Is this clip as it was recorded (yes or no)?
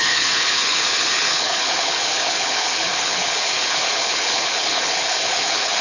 no